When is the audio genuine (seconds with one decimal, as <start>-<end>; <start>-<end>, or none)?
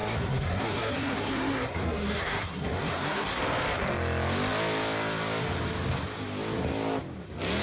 3.4-7.6